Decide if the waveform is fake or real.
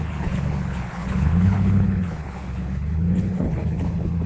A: fake